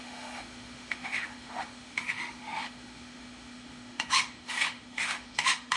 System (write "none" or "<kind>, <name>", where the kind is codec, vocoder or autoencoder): autoencoder, DAC-VAE